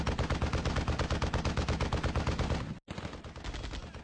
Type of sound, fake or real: real